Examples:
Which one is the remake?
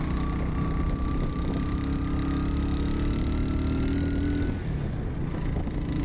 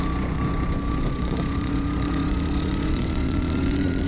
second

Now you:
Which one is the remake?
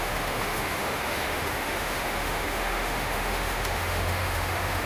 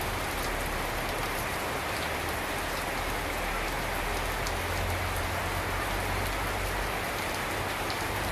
first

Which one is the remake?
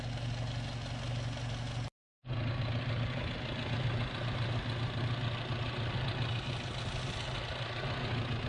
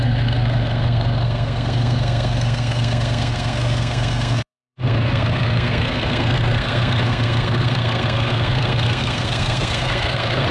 second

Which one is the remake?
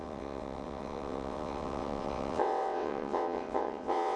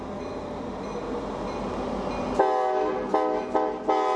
first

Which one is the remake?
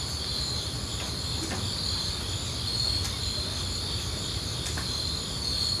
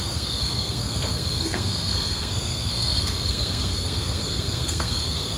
second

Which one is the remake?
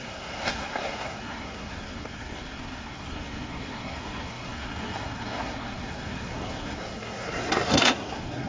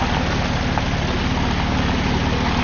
first